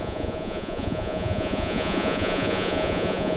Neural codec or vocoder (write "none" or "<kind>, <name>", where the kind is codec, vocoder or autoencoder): vocoder, Vocos